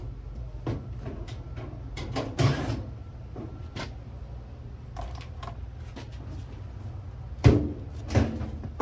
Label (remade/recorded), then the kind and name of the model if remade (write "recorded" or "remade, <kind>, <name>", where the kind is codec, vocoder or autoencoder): recorded